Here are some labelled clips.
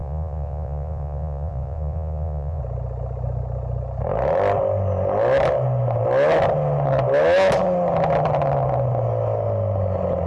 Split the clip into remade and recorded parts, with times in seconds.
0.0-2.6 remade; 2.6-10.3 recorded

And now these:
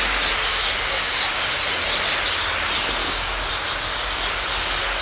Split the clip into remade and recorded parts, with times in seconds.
0.0-0.5 recorded; 0.5-1.6 remade; 1.6-3.0 recorded; 3.0-3.5 remade; 3.5-5.0 recorded

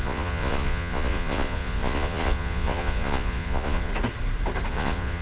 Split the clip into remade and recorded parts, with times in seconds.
0.0-3.9 remade; 3.9-4.7 recorded; 4.7-5.2 remade

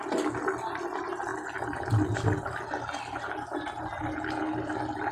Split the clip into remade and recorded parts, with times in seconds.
0.0-5.1 recorded

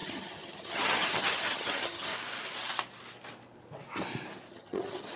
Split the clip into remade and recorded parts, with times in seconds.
0.0-2.1 remade; 2.1-4.5 recorded; 4.5-5.2 remade